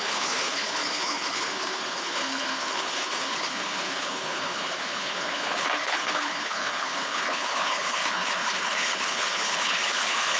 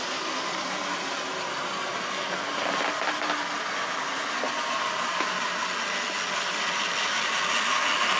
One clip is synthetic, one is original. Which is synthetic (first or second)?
first